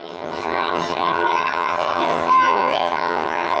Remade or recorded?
remade